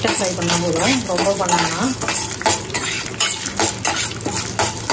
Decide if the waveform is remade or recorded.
recorded